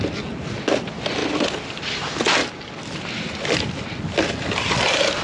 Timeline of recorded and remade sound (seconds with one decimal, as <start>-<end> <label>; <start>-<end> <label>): 0.0-5.2 recorded